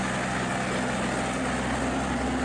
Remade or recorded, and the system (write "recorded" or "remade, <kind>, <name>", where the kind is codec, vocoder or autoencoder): recorded